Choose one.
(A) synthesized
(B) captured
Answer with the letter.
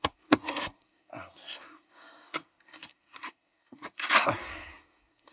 A